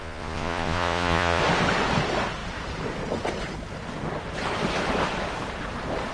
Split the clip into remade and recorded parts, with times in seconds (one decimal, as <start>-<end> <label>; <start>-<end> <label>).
0.0-1.4 remade; 1.4-6.1 recorded